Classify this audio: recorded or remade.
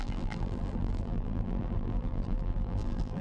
remade